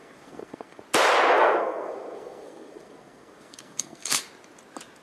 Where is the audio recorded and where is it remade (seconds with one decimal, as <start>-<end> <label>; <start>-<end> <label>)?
0.0-0.8 remade; 0.8-1.3 recorded; 1.3-4.2 remade; 4.2-5.0 recorded